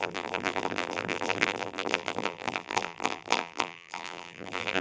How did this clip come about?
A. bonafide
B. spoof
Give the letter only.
B